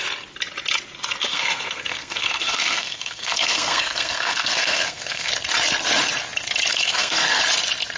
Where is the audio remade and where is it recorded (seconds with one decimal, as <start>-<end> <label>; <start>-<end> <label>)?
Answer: 0.0-1.3 recorded; 1.3-5.3 remade; 5.3-6.7 recorded; 6.7-7.4 remade; 7.4-8.0 recorded